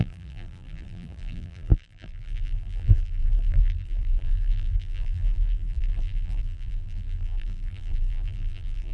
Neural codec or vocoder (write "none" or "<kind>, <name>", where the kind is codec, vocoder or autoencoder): vocoder, BigVGAN v2